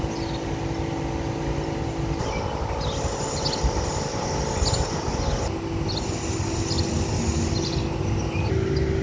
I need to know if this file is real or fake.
real